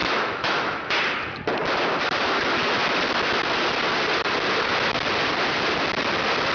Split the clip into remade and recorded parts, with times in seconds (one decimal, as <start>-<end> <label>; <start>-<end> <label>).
0.0-0.9 remade; 0.9-6.5 recorded